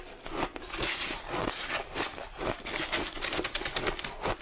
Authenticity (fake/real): real